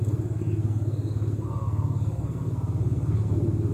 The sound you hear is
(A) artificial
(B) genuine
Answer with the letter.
A